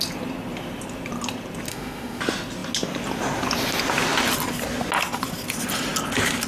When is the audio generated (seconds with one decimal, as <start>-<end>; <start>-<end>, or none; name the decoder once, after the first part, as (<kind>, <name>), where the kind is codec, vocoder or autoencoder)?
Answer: 1.7-2.2 (autoencoder, DAC-VAE)